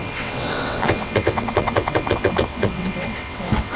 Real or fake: fake